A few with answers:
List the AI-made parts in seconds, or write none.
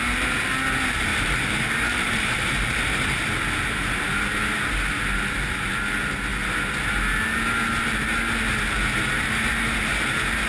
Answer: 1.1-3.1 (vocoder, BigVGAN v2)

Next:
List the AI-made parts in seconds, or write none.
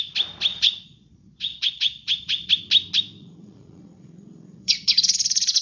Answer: 0.5-2.5 (vocoder, Vocos); 3.2-5.6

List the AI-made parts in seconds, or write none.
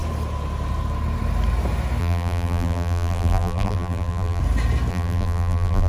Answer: 2.0-4.4 (vocoder, BigVGAN v2); 4.9-5.9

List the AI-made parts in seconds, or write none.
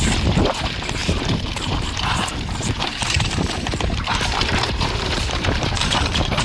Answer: 0.0-6.4 (vocoder, BigVGAN v2)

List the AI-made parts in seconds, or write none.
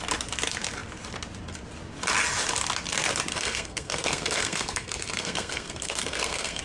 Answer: 3.3-6.6 (codec, SNAC)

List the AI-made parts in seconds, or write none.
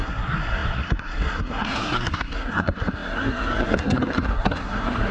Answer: 0.0-5.1 (codec, SNAC)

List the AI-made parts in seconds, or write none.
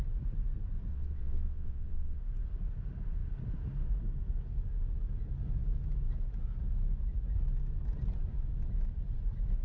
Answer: 0.9-2.2 (vocoder, WaveNeXt)